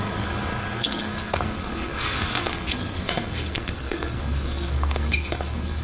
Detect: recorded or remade remade